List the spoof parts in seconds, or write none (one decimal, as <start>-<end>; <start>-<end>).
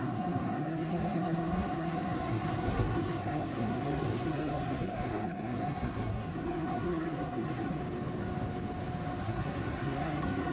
0.0-7.8; 9.2-10.5